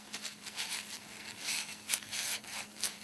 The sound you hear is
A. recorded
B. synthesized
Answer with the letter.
B